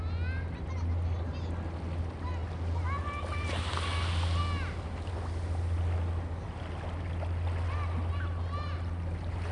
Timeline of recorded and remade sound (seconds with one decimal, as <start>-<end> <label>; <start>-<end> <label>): 0.0-9.5 recorded

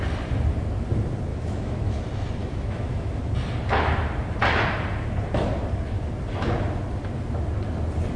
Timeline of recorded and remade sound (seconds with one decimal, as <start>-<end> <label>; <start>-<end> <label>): 0.0-1.3 recorded; 1.3-2.0 remade; 2.0-2.4 recorded; 2.4-3.3 remade; 3.3-8.2 recorded